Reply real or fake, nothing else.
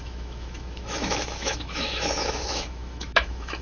fake